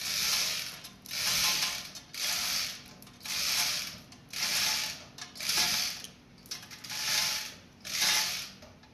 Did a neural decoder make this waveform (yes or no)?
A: no